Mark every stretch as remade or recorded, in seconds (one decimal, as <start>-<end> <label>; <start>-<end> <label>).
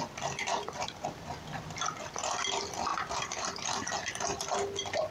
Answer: 0.0-0.5 recorded; 0.5-1.3 remade; 1.3-2.9 recorded; 2.9-3.9 remade; 3.9-5.1 recorded